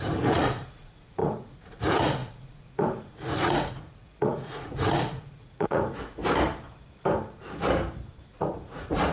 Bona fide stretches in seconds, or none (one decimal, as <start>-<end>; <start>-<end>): 6.2-8.3

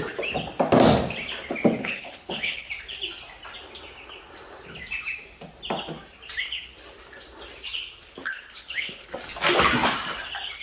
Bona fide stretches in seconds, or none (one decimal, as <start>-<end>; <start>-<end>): 0.0-1.8; 2.7-8.2; 9.1-10.6

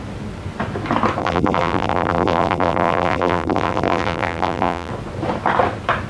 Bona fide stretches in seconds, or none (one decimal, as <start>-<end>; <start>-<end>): 0.0-1.2; 4.9-6.1

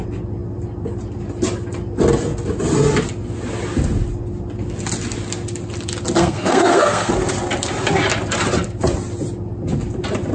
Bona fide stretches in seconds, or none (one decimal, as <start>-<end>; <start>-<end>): 0.0-6.2; 7.1-10.3

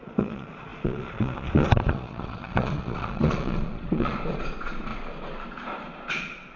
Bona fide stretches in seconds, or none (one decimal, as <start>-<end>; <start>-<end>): 4.9-6.1

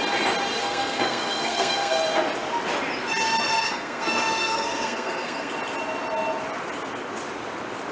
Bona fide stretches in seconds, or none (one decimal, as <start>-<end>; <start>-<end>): 0.0-0.6; 2.0-3.5; 5.5-7.9

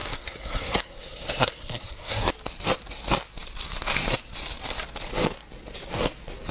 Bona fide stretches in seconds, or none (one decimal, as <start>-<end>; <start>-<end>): 2.3-6.5